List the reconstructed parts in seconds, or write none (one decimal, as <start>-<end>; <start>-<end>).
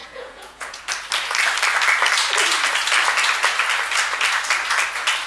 0.0-0.8